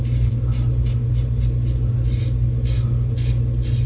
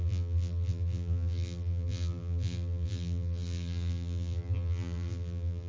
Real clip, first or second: first